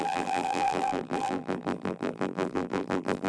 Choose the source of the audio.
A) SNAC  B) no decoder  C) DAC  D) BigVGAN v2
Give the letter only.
D